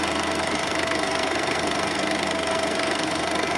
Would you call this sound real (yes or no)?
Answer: no